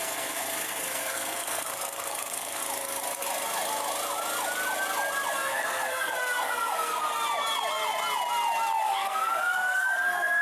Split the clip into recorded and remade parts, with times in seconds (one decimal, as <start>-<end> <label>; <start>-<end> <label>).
0.0-2.6 remade; 2.6-5.3 recorded; 5.3-7.1 remade; 7.1-8.8 recorded; 8.8-10.4 remade